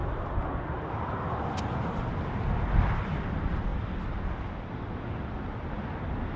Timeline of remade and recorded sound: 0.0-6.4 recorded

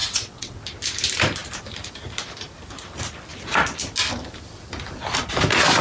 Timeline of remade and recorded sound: 0.0-0.6 remade; 0.6-5.8 recorded

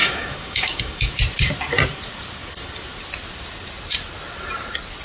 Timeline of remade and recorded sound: 0.0-1.1 remade; 1.1-5.0 recorded

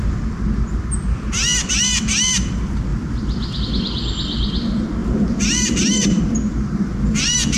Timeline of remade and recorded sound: 0.0-2.9 recorded; 2.9-3.6 remade; 3.6-5.0 recorded; 5.0-6.2 remade; 6.2-7.6 recorded

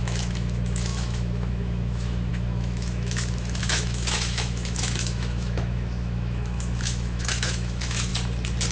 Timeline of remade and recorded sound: 0.0-8.1 remade; 8.1-8.7 recorded

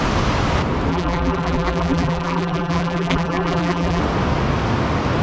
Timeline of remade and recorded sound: 0.0-0.9 recorded; 0.9-4.0 remade; 4.0-5.2 recorded